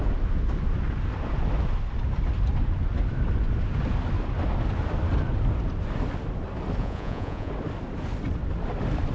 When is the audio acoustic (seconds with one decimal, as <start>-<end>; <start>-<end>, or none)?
0.0-6.8; 7.5-9.1